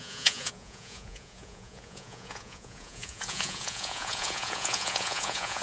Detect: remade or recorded remade